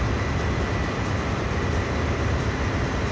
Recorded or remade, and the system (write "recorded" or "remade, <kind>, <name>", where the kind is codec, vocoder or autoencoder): recorded